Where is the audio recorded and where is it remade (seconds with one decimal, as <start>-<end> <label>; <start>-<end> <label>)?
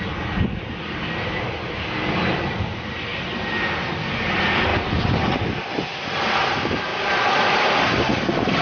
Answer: 0.0-8.6 recorded